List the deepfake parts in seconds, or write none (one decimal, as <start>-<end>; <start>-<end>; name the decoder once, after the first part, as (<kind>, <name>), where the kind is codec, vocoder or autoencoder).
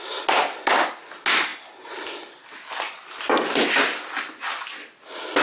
none